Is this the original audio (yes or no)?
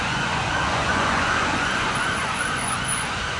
no